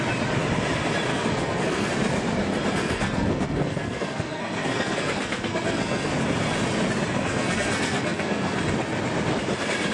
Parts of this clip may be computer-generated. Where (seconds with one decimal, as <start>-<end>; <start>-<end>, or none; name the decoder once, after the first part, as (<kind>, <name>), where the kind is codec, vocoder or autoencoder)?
1.1-1.9 (codec, SNAC); 2.8-6.1; 7.3-8.6